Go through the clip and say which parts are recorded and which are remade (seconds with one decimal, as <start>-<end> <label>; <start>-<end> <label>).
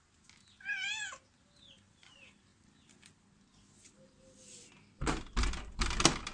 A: 0.0-6.3 recorded